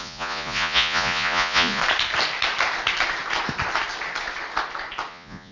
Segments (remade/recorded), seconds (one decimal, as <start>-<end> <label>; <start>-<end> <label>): 0.0-1.8 remade; 1.8-5.1 recorded; 5.1-5.5 remade